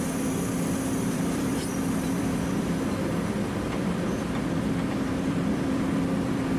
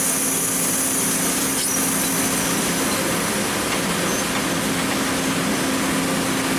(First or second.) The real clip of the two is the second